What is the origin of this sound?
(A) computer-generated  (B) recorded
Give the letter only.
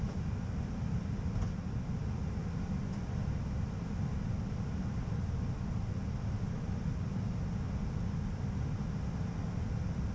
B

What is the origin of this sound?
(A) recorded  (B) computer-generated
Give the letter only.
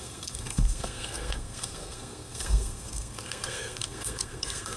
B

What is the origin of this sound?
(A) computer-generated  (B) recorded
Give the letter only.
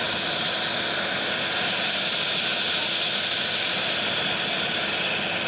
B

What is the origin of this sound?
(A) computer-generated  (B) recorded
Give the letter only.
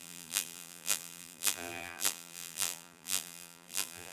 A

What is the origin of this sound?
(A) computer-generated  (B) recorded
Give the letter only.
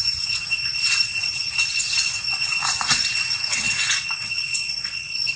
A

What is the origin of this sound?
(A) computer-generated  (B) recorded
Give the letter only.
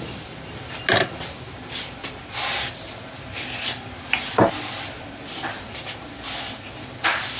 B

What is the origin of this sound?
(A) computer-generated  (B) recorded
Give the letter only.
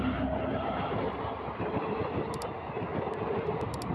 B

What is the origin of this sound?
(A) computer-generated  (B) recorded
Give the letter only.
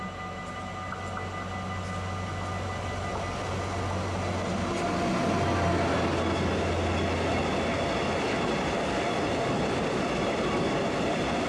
B